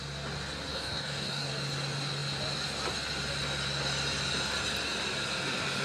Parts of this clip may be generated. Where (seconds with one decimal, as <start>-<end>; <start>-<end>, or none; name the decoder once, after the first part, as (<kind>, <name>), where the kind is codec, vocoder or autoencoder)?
0.7-1.5 (codec, DAC)